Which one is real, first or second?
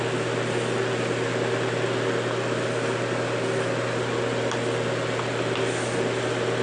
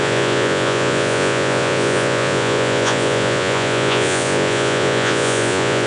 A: first